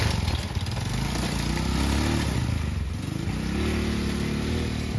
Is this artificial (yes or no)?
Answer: no